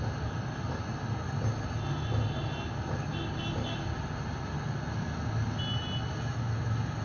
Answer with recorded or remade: recorded